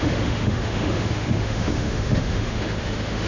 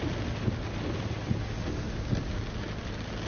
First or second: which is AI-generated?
first